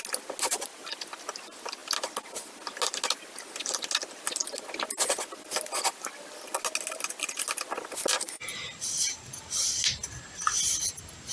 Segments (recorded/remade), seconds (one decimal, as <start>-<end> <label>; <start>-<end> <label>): 0.0-11.3 recorded